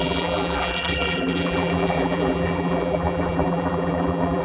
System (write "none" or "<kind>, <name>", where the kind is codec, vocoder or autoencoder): vocoder, BigVGAN v2